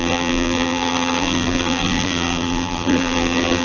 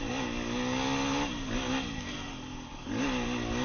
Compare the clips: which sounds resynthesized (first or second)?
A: first